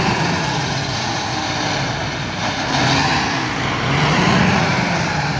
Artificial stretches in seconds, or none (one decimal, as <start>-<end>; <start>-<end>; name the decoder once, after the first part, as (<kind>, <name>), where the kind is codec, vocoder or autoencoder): 0.0-1.3 (vocoder, Vocos); 4.0-4.7